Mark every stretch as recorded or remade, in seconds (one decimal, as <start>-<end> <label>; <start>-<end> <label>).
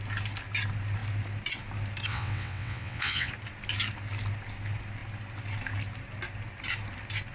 0.0-2.1 recorded; 2.1-3.3 remade; 3.3-7.3 recorded